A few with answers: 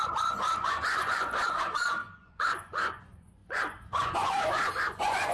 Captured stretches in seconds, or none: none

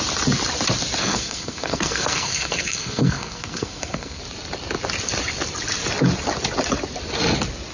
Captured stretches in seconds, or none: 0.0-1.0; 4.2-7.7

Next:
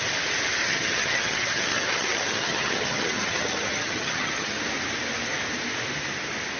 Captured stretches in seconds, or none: 0.0-0.6; 4.6-6.6

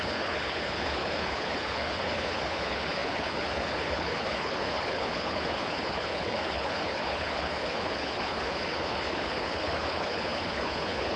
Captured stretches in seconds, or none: none

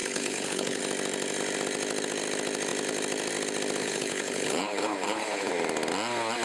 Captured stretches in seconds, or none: 0.8-3.8; 5.5-6.4

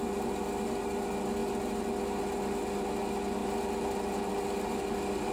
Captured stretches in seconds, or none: 0.0-5.3

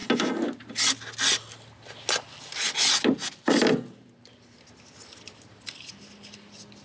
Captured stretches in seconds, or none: 0.0-6.8